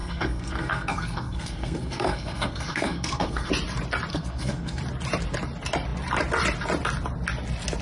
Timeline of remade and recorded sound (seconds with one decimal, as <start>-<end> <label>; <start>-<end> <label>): 0.0-3.5 remade; 3.5-4.1 recorded; 4.1-4.8 remade; 4.8-7.8 recorded